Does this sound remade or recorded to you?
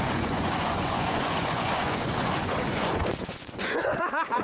remade